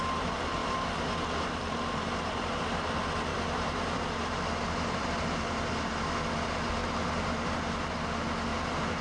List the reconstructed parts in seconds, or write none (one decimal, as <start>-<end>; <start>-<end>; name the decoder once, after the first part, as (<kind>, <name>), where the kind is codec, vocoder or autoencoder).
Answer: 0.6-2.9 (vocoder, BigVGAN v2); 3.3-6.1; 6.8-7.6; 8.5-9.0